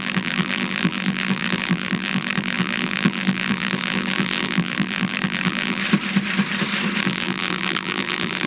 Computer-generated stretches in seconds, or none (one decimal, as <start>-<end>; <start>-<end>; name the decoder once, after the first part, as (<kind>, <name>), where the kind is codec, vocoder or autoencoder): 0.0-5.8 (vocoder, BigVGAN v2); 7.0-8.5